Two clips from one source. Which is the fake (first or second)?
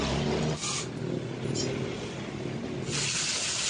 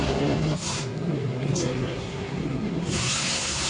second